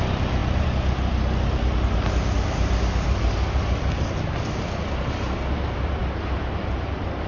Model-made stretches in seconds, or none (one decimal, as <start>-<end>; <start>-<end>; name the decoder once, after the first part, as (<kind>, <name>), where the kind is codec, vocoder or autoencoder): 0.0-7.3 (vocoder, BigVGAN v2)